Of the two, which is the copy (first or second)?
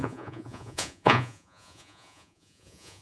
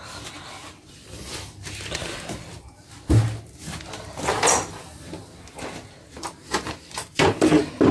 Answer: first